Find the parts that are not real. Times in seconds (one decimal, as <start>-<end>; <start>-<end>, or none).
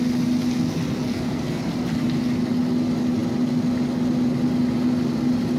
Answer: 1.1-1.6